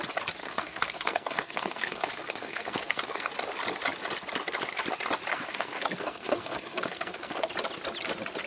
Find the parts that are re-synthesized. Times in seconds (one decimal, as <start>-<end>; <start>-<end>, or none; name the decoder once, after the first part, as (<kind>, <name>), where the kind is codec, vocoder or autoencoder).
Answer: 0.4-3.3 (codec, SNAC); 5.3-7.5